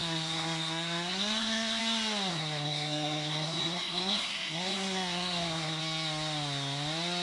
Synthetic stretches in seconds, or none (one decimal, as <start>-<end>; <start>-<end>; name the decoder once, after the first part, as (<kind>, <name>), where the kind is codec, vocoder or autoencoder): 0.0-1.8 (codec, SNAC); 2.3-5.8